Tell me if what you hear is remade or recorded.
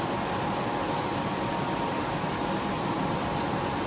recorded